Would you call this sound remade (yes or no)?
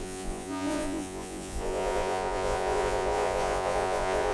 yes